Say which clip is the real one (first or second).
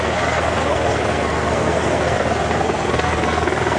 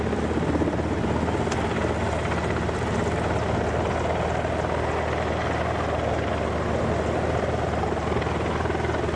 second